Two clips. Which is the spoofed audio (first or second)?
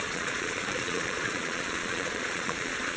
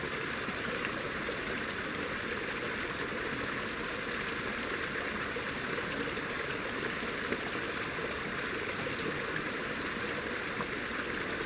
first